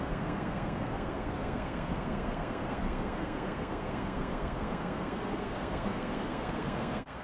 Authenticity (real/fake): fake